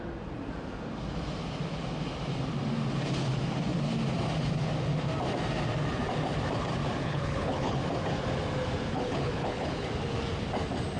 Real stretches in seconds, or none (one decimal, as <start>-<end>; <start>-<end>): 0.0-7.0; 7.8-8.9; 9.9-11.0